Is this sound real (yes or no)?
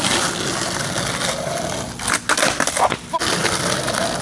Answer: yes